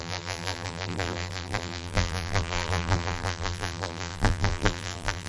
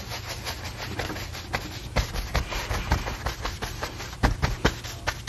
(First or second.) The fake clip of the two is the first